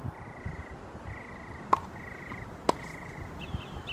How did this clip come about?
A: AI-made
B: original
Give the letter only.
B